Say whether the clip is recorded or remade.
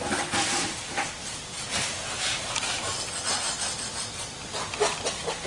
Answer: recorded